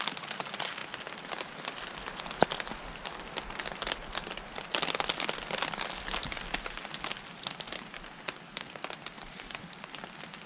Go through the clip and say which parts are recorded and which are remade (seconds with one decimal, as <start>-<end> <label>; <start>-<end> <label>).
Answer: 0.0-10.5 recorded